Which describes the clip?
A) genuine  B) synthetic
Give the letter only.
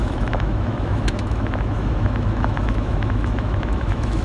B